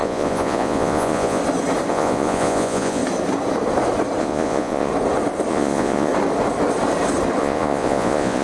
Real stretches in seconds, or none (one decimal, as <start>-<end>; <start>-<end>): 1.4-1.9; 3.0-4.2; 4.9-5.5; 6.1-7.4